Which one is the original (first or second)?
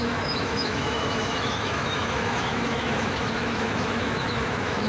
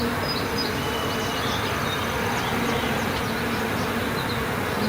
second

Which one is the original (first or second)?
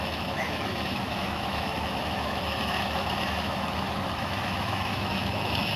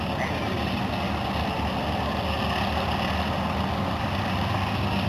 second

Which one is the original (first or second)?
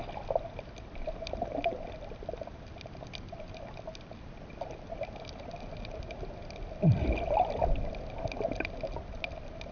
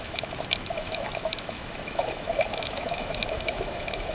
first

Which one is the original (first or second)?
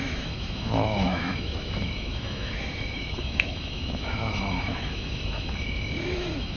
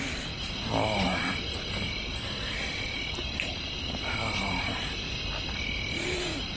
second